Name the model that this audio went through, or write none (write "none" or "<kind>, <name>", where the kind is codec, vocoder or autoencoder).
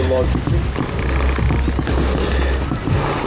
none